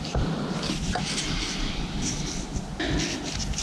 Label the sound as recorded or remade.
recorded